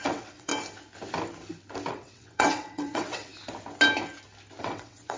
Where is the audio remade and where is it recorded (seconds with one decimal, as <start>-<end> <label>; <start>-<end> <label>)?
0.0-0.5 remade; 0.5-1.9 recorded; 1.9-3.3 remade; 3.3-4.6 recorded; 4.6-5.2 remade